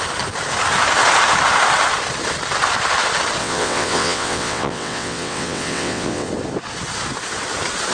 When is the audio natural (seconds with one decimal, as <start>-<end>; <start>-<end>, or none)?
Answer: 0.0-3.4; 6.3-7.9